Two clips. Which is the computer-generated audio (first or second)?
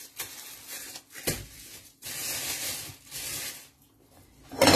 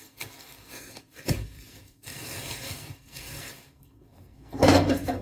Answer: second